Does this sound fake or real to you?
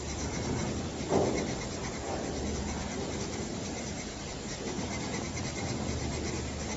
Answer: real